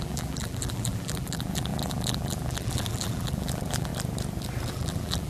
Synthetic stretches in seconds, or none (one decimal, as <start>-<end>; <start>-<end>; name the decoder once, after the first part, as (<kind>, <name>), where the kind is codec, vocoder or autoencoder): 0.0-3.9 (vocoder, BigVGAN v2); 4.7-5.3